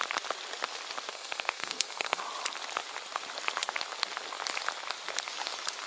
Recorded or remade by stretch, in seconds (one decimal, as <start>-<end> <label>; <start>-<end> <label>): 0.0-1.1 recorded; 1.1-2.2 remade; 2.2-5.9 recorded